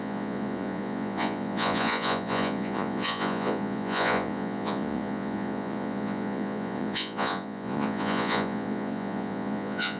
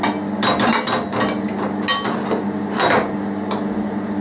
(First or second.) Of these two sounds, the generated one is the first